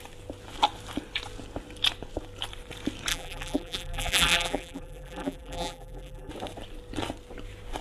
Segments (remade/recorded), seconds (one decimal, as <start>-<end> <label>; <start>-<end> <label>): 0.0-3.1 recorded; 3.1-6.3 remade; 6.3-7.8 recorded